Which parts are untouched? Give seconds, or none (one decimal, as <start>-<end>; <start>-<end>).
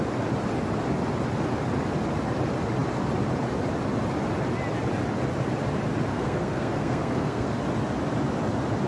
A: 0.0-6.1; 7.6-8.9